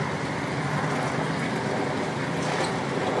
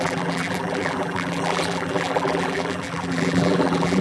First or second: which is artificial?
second